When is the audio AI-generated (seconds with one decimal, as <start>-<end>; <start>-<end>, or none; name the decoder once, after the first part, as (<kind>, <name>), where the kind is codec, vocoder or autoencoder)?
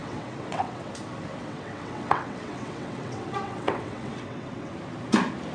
0.0-0.9 (vocoder, WaveNeXt); 1.4-4.7